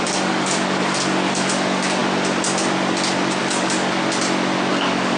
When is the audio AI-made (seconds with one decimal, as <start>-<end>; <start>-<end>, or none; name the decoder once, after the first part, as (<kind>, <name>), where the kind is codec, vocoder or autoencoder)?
0.0-2.0 (codec, DAC); 3.4-4.0; 4.7-5.2